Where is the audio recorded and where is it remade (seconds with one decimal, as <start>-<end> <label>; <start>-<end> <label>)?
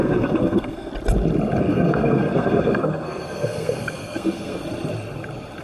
0.0-0.9 remade; 0.9-1.6 recorded; 1.6-4.6 remade; 4.6-5.6 recorded